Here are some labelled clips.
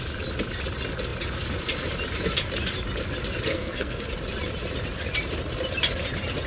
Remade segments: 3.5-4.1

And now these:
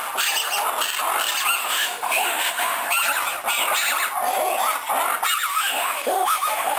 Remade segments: 1.6-2.9; 5.5-6.8